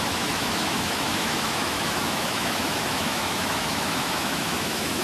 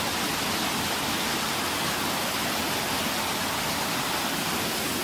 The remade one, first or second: first